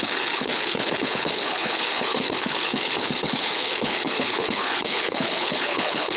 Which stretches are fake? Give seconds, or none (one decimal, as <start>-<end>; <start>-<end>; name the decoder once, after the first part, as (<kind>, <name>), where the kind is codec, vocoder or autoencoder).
0.0-6.2 (codec, HILCodec)

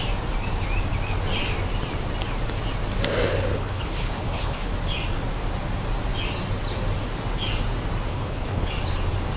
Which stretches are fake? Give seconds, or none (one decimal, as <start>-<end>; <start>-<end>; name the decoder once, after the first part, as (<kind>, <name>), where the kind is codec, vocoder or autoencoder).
3.5-4.7 (codec, HILCodec); 8.1-8.7

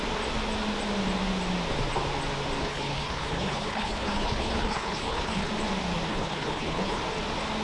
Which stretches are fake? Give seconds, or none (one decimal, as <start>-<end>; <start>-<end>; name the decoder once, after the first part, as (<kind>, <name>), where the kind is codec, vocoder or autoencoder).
2.6-5.5 (codec, HILCodec); 6.1-7.0

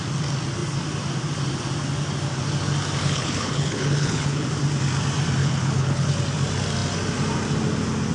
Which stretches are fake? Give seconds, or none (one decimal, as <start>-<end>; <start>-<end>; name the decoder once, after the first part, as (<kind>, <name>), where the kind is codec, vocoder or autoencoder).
3.0-4.5 (codec, HILCodec); 5.4-6.1

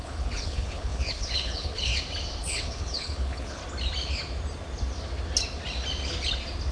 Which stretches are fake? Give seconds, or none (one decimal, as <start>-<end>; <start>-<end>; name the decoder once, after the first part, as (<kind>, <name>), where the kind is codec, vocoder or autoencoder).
0.0-1.9 (codec, HILCodec); 2.4-3.6

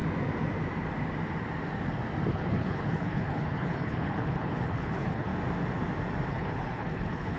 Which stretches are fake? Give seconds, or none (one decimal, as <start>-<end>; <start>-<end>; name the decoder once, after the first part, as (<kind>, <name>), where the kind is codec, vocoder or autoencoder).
2.3-5.3 (codec, HILCodec); 6.3-7.4

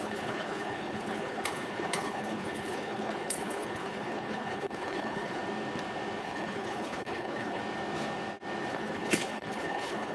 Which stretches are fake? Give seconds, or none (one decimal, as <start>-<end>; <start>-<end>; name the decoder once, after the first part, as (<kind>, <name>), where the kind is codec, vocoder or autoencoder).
0.0-5.4 (codec, HILCodec); 6.2-7.6; 8.7-10.1

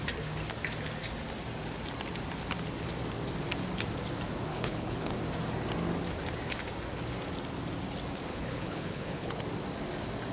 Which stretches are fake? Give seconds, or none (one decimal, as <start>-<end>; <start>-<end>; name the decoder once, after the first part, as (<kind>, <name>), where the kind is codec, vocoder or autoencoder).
4.5-5.1 (codec, HILCodec); 8.3-9.4